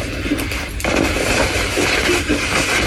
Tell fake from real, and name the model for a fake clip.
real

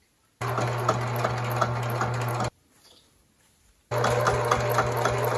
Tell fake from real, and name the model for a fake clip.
real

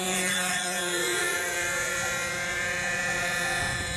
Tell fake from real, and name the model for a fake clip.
fake, vocoder, Vocos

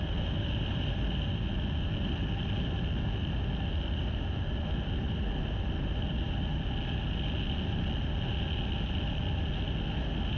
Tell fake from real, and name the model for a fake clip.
real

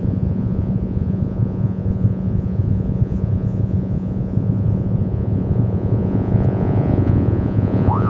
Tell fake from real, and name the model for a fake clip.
fake, vocoder, Vocos